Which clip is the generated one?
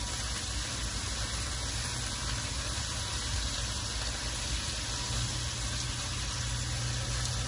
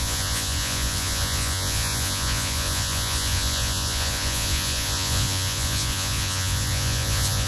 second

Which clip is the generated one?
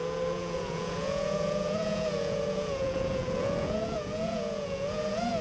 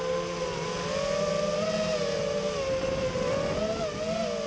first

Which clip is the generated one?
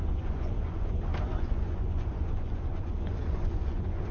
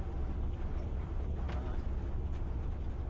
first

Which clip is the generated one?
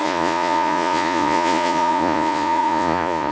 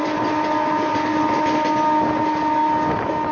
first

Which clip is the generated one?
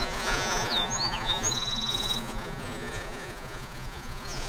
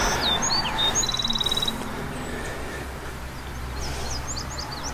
first